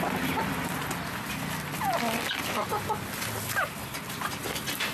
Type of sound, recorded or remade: recorded